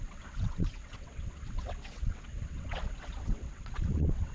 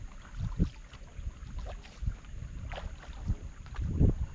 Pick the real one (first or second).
second